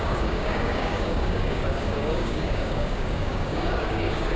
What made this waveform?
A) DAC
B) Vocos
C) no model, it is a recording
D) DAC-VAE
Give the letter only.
A